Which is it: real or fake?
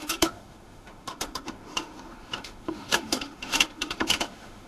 fake